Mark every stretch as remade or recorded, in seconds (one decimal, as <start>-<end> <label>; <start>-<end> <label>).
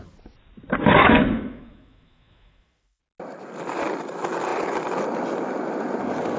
0.0-1.0 recorded; 1.0-3.0 remade; 3.0-6.4 recorded